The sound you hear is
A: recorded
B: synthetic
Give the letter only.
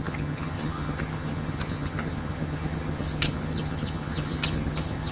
B